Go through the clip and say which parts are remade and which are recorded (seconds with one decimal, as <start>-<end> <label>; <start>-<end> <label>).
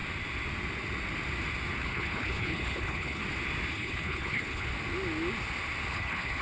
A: 0.0-1.8 recorded; 1.8-3.2 remade; 3.2-3.7 recorded; 3.7-4.7 remade; 4.7-5.9 recorded; 5.9-6.4 remade